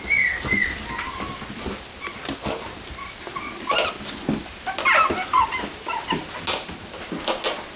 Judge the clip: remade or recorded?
recorded